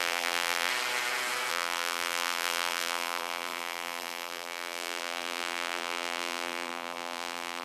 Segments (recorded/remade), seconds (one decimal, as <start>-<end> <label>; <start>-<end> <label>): 0.0-0.7 remade; 0.7-1.5 recorded; 1.5-7.6 remade